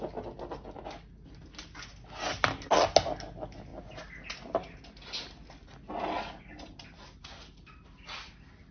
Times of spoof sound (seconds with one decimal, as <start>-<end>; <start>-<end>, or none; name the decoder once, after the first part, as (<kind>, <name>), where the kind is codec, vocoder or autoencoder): none